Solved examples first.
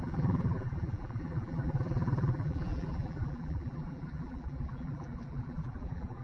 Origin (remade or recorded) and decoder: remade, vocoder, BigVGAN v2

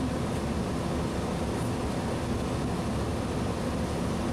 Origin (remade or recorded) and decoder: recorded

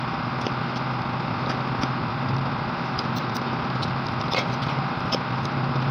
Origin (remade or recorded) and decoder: recorded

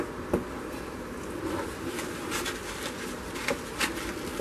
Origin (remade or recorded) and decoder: recorded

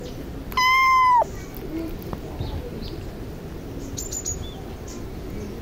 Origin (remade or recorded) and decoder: recorded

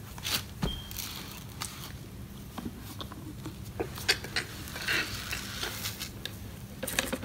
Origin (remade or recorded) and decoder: recorded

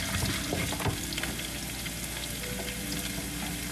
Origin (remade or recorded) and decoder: recorded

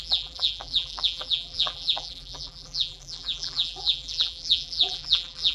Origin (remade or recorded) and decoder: remade, vocoder, BigVGAN v2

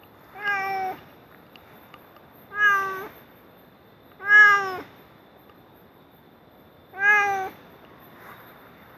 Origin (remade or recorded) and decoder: recorded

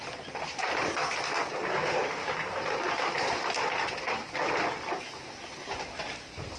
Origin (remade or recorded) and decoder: recorded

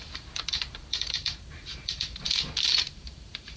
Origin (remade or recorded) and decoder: remade, vocoder, BigVGAN v2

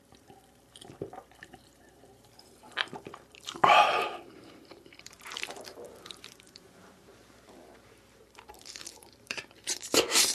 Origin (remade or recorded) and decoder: remade, vocoder, BigVGAN v2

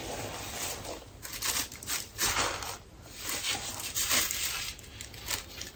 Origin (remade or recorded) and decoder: remade, vocoder, BigVGAN v2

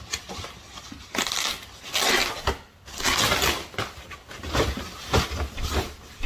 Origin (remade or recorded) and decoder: recorded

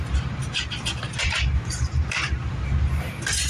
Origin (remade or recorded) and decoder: remade, vocoder, BigVGAN v2